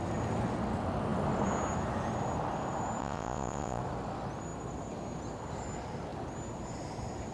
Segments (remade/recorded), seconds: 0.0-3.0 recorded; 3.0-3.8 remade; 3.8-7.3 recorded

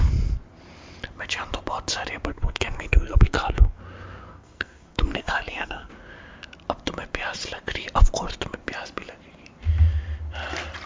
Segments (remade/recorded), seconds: 0.0-2.3 recorded; 2.3-3.8 remade; 3.8-4.3 recorded; 4.3-5.9 remade; 5.9-10.9 recorded